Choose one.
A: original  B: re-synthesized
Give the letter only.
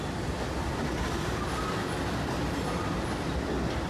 A